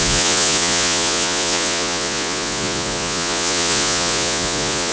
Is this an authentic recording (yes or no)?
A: no